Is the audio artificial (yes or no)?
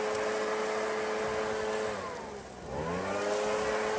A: no